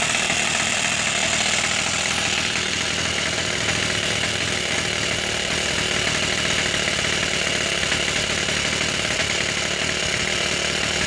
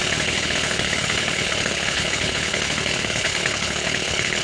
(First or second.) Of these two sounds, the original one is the first